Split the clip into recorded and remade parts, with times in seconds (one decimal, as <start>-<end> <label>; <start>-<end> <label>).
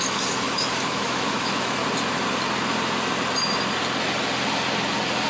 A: 0.0-1.8 remade; 1.8-5.3 recorded